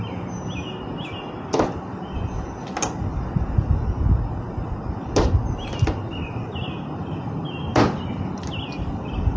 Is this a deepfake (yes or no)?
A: no